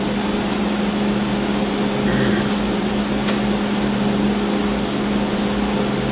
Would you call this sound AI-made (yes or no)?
no